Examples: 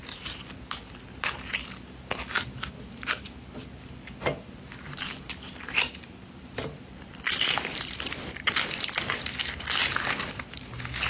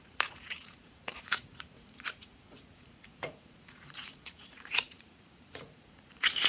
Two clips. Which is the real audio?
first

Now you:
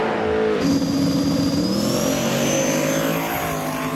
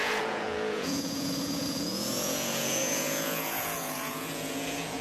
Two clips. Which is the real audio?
first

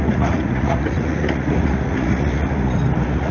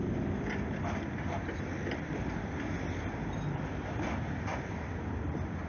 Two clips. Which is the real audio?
second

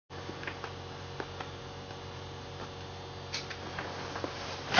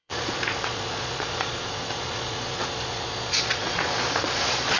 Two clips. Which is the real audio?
first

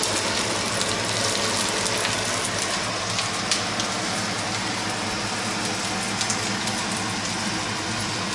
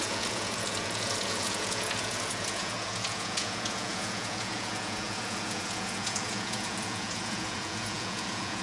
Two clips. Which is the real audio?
first